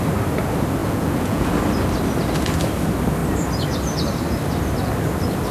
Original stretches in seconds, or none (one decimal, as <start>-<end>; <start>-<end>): 0.0-0.8; 1.5-5.5